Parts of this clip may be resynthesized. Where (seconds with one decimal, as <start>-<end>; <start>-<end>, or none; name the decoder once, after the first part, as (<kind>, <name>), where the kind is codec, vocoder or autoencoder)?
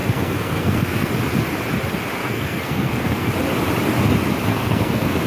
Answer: 0.0-1.1 (codec, SNAC); 2.2-3.3; 4.5-5.3